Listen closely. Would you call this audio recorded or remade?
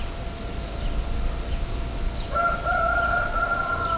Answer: recorded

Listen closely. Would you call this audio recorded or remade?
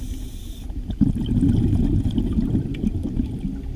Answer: recorded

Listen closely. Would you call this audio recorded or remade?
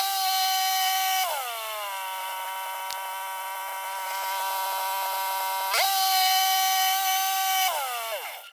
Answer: recorded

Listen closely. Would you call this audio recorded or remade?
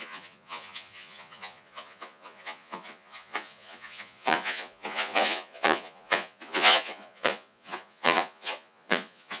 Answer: remade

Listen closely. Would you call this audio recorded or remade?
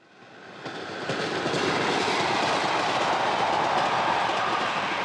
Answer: recorded